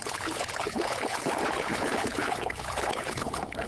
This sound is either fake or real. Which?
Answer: fake